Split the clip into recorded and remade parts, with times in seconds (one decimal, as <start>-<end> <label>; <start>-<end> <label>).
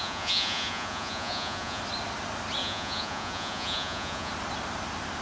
0.0-1.8 remade; 1.8-2.6 recorded; 2.6-4.3 remade; 4.3-5.2 recorded